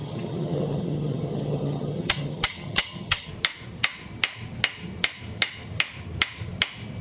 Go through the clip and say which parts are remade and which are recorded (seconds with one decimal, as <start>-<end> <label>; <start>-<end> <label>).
0.0-3.3 remade; 3.3-7.0 recorded